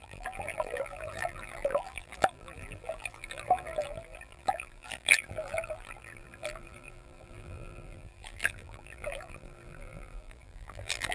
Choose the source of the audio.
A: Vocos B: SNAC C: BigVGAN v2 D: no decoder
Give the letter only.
C